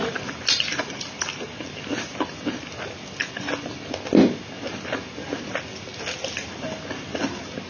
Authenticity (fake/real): real